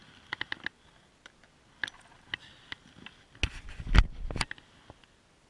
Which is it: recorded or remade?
recorded